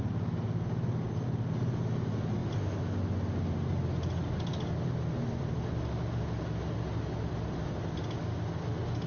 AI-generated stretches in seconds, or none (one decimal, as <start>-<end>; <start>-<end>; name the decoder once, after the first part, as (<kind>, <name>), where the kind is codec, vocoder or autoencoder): none